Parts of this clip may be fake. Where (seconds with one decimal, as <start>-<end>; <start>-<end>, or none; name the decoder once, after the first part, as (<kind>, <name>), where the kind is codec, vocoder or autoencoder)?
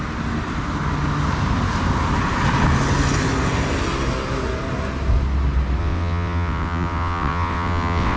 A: 5.8-8.2 (vocoder, WaveNeXt)